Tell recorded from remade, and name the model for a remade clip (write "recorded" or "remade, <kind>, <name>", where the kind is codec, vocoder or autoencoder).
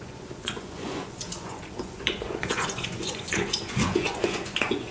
remade, vocoder, Vocos